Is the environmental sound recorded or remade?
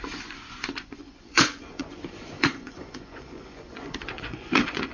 remade